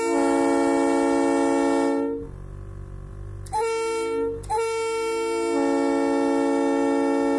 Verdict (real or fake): real